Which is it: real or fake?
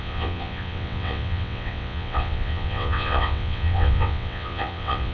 fake